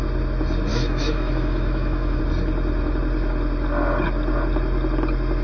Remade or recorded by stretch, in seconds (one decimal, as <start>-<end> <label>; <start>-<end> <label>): 0.0-0.7 recorded; 0.7-2.2 remade; 2.2-5.4 recorded